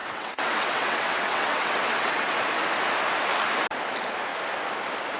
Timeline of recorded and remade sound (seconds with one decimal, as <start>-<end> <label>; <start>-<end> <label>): 0.0-2.4 remade; 2.4-5.2 recorded